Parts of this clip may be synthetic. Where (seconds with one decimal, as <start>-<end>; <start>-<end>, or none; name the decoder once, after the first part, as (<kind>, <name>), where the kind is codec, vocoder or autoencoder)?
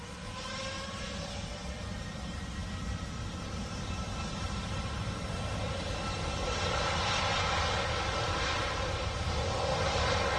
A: none